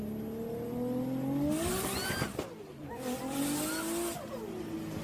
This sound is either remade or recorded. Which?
recorded